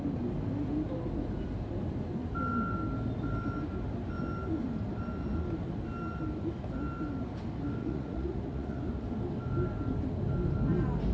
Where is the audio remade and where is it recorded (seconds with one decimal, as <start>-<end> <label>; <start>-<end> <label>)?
0.0-7.8 recorded; 7.8-8.8 remade; 8.8-11.1 recorded